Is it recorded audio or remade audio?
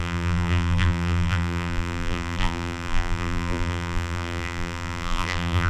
remade